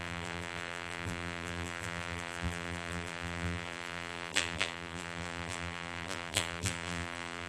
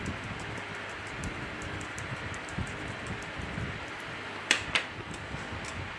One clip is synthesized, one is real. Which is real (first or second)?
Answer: second